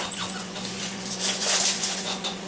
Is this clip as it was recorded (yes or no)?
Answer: no